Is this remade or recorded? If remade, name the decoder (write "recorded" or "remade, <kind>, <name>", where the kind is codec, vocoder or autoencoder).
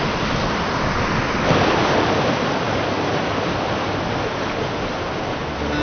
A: recorded